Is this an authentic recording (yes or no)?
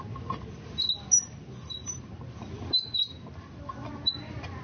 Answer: yes